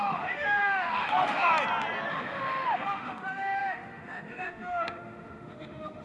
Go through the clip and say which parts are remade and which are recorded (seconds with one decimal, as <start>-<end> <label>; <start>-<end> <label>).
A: 0.0-1.5 remade; 1.5-2.1 recorded; 2.1-6.0 remade